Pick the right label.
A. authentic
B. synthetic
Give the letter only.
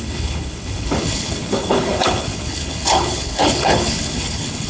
B